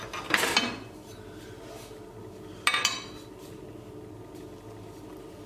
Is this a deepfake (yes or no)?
no